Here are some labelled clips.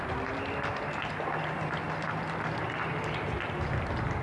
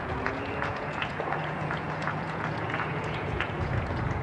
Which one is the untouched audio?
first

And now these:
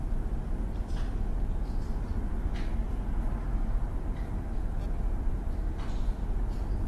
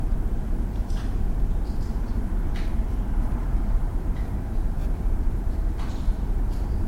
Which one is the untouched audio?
first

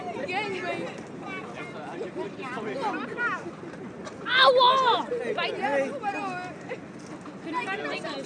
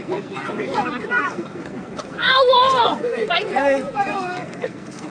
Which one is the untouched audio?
first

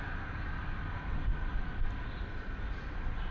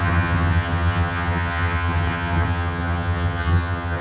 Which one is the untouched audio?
first